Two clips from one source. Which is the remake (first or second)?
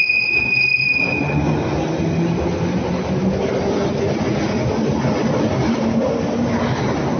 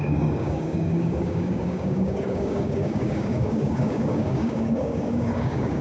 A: second